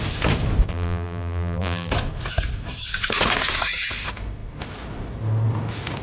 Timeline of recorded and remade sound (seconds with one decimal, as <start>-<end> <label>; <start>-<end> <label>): 0.0-0.7 recorded; 0.7-1.9 remade; 1.9-6.0 recorded